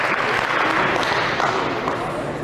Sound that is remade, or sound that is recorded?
recorded